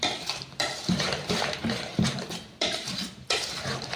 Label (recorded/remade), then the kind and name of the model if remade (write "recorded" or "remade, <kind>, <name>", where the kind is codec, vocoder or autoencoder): remade, vocoder, BigVGAN v2